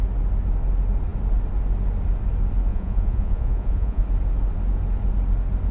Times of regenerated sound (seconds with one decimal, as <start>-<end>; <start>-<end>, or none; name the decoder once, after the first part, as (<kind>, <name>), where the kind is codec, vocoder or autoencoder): 2.7-4.0 (vocoder, Vocos)